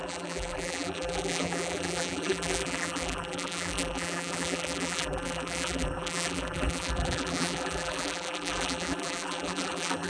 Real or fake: fake